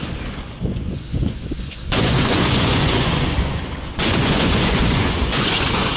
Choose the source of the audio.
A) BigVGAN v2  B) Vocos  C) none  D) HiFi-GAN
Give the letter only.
B